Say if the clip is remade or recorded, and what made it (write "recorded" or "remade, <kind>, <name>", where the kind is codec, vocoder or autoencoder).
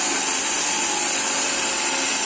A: recorded